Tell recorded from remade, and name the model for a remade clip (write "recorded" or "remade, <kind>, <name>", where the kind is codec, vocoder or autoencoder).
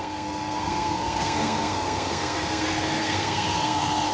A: remade, codec, SNAC